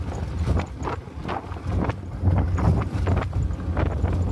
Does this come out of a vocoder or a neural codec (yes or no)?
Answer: no